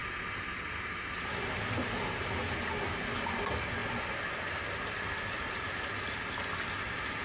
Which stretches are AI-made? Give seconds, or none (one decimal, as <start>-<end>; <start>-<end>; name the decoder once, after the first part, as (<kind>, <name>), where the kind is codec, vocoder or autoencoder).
none